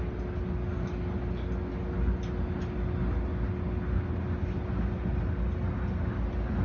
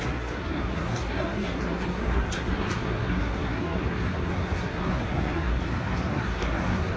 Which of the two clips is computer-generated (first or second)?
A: second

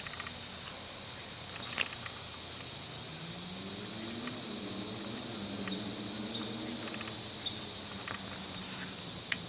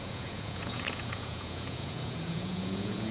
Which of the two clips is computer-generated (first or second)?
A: second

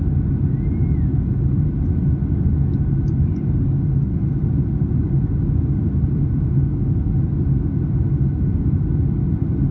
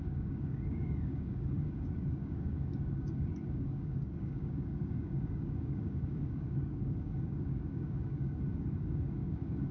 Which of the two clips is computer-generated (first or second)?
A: second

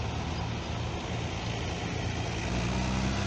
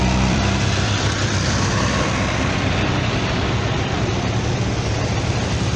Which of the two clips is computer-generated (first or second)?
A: second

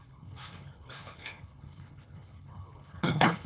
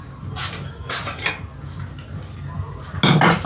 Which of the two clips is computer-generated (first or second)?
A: first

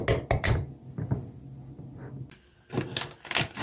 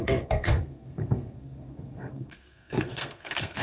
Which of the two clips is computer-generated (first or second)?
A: second